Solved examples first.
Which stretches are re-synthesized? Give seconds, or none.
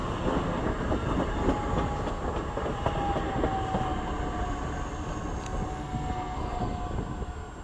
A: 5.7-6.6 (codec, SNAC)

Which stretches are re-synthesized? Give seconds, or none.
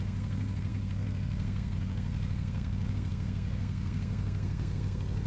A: 0.0-5.3 (codec, SNAC)